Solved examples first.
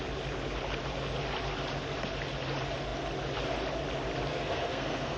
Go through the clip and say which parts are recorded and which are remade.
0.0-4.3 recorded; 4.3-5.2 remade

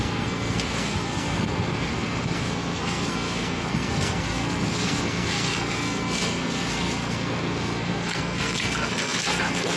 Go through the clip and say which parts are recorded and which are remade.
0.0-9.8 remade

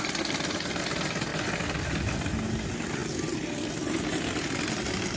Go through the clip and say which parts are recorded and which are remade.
0.0-5.2 recorded